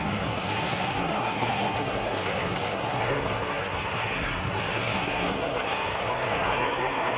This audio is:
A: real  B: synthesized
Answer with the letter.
B